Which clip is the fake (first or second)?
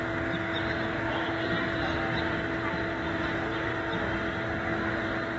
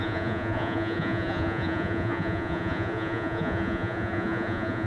second